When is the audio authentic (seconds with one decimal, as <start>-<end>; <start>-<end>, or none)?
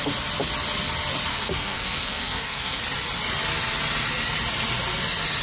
0.0-1.3; 2.8-5.4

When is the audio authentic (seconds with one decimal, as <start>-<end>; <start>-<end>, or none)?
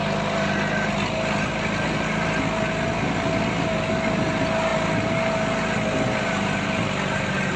0.0-7.6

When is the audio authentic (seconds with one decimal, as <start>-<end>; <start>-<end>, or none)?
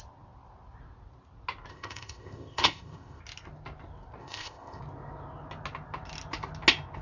0.0-1.7; 3.2-4.2; 4.8-7.0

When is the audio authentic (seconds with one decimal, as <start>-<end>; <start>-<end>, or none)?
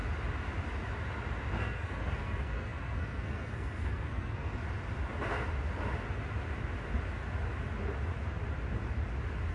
0.0-1.6; 4.6-9.5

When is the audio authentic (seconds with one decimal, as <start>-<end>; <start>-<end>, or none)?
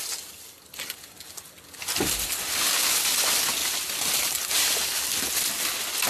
0.0-3.6; 4.5-6.1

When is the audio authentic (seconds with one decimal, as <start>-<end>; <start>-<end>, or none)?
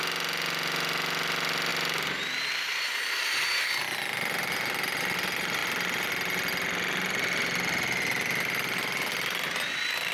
0.0-10.1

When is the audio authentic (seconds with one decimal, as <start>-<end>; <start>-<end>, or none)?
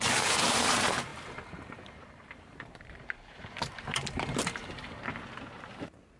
none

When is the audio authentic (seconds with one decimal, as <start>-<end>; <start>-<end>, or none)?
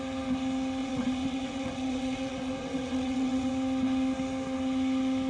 0.0-0.8; 3.5-5.3